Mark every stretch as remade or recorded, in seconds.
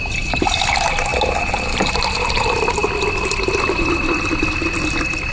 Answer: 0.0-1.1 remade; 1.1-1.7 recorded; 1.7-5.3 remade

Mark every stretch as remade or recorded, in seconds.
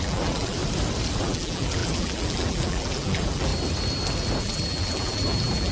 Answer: 0.0-0.6 remade; 0.6-1.2 recorded; 1.2-3.5 remade; 3.5-4.4 recorded; 4.4-5.7 remade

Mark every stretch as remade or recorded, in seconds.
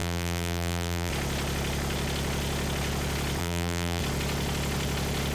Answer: 0.0-1.1 remade; 1.1-3.4 recorded; 3.4-4.0 remade; 4.0-5.3 recorded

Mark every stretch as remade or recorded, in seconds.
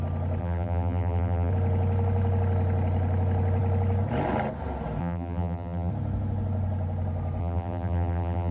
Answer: 0.0-0.4 recorded; 0.4-1.5 remade; 1.5-5.0 recorded; 5.0-5.9 remade; 5.9-7.4 recorded; 7.4-8.5 remade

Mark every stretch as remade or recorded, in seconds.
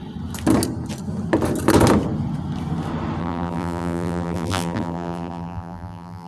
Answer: 0.0-3.2 recorded; 3.2-6.3 remade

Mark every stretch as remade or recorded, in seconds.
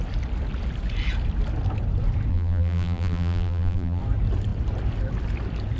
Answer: 0.0-2.3 recorded; 2.3-4.0 remade; 4.0-5.8 recorded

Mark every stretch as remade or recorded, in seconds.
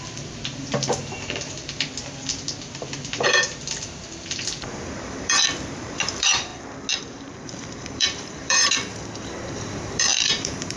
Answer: 0.0-6.5 remade; 6.5-7.0 recorded; 7.0-10.8 remade